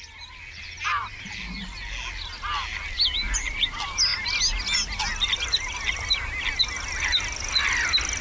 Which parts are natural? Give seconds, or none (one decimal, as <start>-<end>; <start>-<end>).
0.0-8.2